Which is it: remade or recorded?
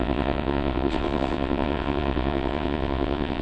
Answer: remade